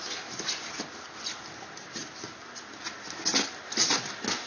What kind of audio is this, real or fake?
real